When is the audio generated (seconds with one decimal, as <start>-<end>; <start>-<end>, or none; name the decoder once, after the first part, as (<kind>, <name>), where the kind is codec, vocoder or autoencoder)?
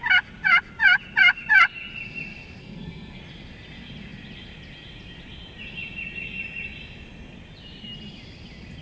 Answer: 2.6-3.2 (codec, SNAC)